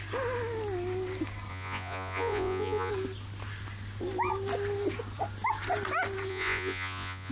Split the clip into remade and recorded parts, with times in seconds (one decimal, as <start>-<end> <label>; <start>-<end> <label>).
0.0-1.5 recorded; 1.5-2.9 remade; 2.9-6.3 recorded; 6.3-7.3 remade